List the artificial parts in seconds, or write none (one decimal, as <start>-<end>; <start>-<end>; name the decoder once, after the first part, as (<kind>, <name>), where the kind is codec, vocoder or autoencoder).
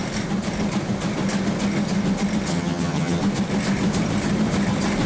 2.5-3.2 (vocoder, HiFi-GAN)